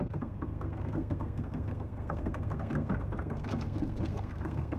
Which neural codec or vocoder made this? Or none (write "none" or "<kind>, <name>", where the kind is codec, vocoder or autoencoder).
codec, SNAC